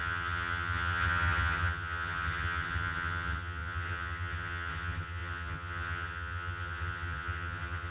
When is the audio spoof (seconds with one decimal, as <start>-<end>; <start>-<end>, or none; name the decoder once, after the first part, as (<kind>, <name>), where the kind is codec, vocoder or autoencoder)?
0.0-7.9 (vocoder, HiFi-GAN)